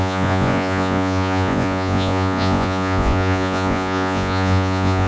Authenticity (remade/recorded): remade